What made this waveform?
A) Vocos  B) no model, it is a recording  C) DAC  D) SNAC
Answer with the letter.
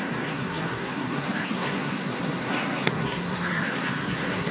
D